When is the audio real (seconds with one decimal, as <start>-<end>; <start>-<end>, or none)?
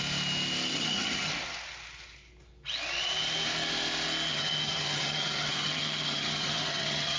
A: 0.0-0.7; 1.3-4.3